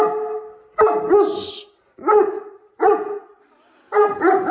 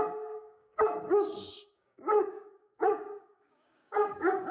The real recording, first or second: first